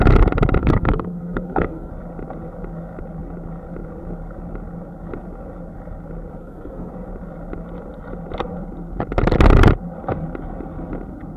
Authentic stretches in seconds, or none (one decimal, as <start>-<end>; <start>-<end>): 0.0-0.6; 1.9-6.4; 6.9-11.4